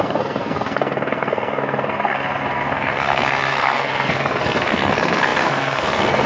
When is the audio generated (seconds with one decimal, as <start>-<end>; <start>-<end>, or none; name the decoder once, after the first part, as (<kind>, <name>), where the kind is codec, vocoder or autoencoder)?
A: 0.0-6.3 (codec, SNAC)